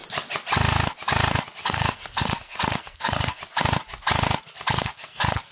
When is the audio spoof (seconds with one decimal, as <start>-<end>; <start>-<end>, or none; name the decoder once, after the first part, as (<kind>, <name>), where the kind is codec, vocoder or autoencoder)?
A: 1.6-3.4 (codec, SNAC); 4.7-5.5